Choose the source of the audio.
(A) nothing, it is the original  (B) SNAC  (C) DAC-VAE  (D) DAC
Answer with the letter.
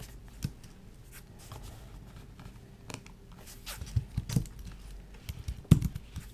A